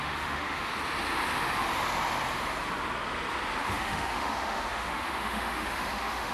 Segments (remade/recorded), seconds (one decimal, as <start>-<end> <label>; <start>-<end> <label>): 0.0-0.7 remade; 0.7-3.6 recorded; 3.6-6.3 remade